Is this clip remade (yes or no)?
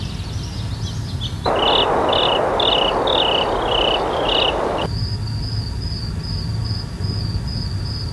no